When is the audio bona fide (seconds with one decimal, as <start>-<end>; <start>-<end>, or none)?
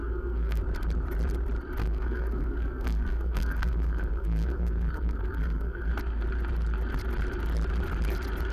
0.6-1.8; 5.9-8.5